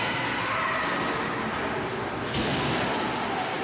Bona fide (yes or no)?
yes